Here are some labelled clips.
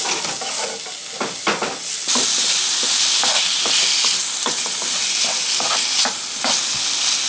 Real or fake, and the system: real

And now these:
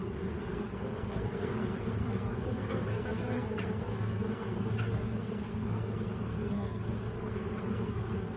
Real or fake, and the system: fake, codec, SNAC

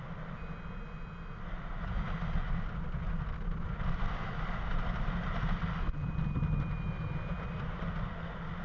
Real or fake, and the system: real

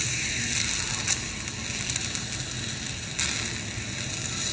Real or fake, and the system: real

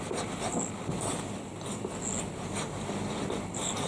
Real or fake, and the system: real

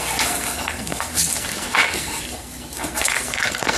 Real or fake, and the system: fake, codec, SNAC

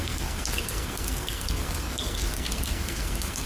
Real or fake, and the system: fake, codec, SNAC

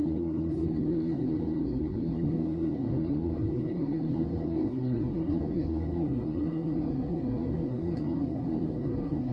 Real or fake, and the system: fake, codec, SNAC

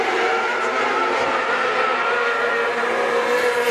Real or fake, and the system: fake, vocoder, BigVGAN v2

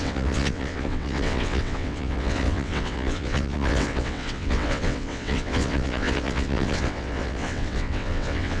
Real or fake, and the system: fake, vocoder, WaveNeXt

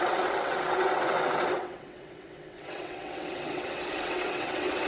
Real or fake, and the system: fake, vocoder, WaveNeXt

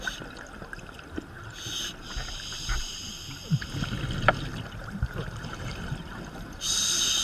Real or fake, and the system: real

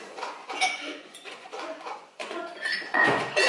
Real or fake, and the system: fake, vocoder, Vocos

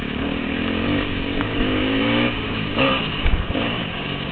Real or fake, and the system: fake, codec, DAC